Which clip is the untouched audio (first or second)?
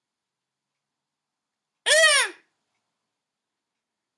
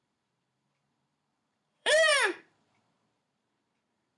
first